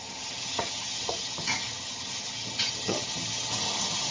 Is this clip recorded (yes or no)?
no